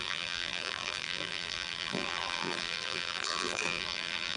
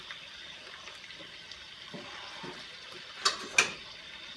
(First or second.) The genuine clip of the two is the second